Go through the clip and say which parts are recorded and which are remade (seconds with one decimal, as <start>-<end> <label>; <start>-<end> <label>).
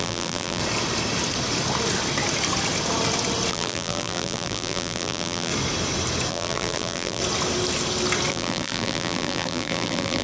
0.0-0.6 remade; 0.6-3.5 recorded; 3.5-5.5 remade; 5.5-6.3 recorded; 6.3-7.2 remade; 7.2-8.3 recorded; 8.3-10.2 remade